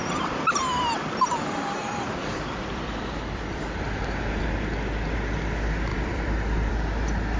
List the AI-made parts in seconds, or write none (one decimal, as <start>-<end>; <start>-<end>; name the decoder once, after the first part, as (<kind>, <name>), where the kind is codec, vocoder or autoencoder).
0.0-4.4 (vocoder, BigVGAN v2); 5.9-6.7